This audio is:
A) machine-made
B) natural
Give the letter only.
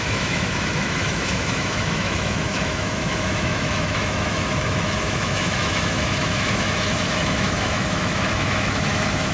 A